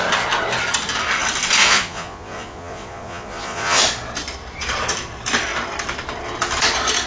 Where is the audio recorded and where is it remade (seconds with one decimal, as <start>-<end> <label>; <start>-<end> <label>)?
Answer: 0.0-1.6 recorded; 1.6-3.8 remade; 3.8-7.1 recorded